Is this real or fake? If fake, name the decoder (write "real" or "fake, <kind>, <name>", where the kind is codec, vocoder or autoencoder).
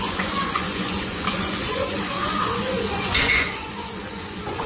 fake, vocoder, Vocos